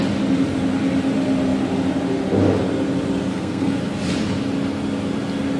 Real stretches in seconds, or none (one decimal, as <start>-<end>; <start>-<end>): 0.0-3.3; 3.8-5.6